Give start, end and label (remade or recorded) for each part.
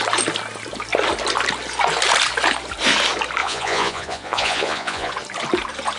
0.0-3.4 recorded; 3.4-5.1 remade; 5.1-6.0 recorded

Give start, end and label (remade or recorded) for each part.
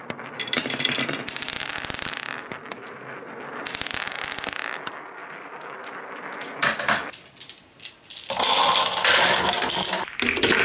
0.0-10.6 recorded